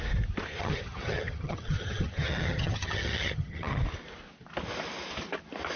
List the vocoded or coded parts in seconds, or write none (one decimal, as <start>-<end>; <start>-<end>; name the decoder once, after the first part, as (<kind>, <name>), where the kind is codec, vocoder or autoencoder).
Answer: 0.6-3.8 (vocoder, HiFi-GAN)